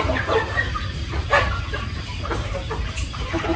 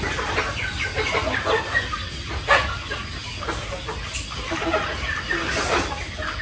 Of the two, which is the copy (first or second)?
first